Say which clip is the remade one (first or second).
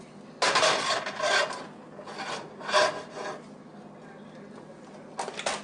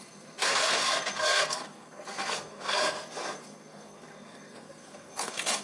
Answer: second